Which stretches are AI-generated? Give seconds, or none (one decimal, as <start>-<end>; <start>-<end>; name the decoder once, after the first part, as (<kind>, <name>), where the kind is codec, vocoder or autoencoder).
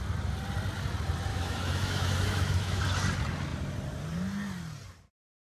1.3-2.8 (autoencoder, DAC-VAE)